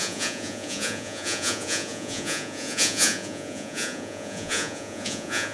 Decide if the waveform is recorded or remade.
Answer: remade